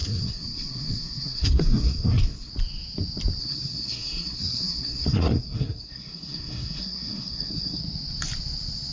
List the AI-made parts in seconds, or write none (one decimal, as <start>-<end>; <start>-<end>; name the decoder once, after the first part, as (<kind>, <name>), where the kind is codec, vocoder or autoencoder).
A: 0.0-2.5 (codec, SNAC); 3.4-7.8

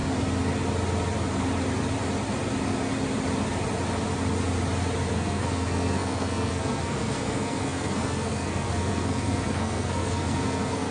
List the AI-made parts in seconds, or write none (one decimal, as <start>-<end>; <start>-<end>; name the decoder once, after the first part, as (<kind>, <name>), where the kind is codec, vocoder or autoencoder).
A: 5.1-10.9 (codec, SNAC)